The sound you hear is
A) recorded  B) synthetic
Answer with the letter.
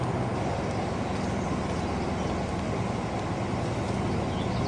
A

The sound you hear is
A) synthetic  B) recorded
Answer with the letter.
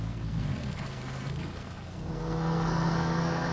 A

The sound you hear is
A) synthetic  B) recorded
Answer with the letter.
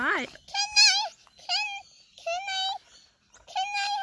B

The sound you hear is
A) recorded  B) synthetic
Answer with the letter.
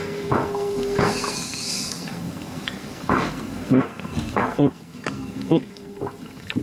B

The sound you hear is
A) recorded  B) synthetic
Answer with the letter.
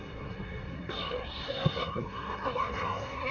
B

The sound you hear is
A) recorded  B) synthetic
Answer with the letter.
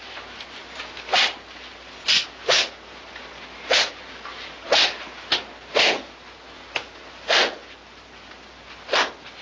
A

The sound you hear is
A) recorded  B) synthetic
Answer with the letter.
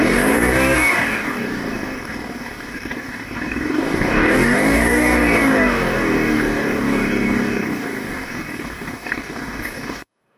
B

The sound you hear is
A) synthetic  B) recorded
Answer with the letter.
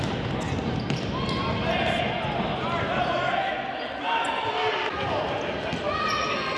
B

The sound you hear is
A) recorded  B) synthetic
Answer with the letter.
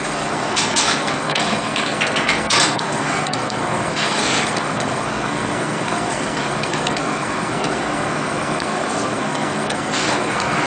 B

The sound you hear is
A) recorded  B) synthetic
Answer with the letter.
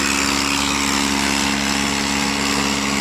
A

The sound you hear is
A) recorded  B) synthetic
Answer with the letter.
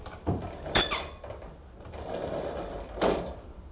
A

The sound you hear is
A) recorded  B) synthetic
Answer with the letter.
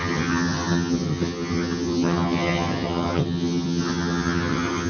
B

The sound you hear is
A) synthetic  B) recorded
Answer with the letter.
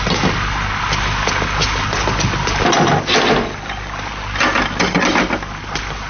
B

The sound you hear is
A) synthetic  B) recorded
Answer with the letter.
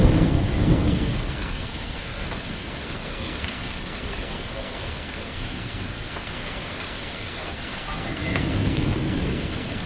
A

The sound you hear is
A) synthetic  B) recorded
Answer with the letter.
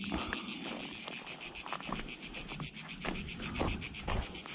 B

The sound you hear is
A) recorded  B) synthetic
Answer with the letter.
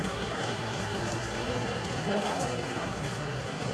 B